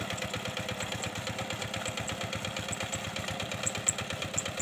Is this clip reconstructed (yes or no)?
no